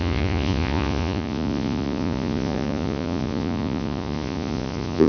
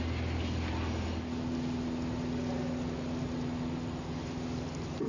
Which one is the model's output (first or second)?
first